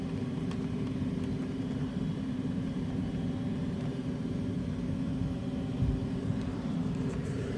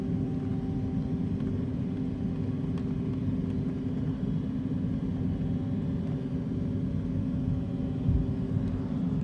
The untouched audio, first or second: second